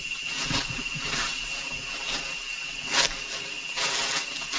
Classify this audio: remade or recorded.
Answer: recorded